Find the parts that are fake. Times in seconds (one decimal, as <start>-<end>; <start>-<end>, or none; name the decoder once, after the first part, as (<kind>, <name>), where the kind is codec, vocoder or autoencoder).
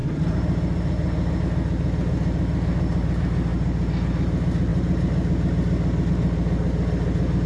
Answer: none